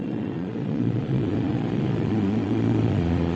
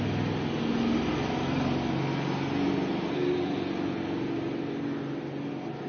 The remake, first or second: first